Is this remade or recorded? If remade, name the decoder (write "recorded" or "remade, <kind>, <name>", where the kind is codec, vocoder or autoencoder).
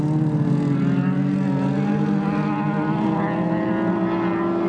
recorded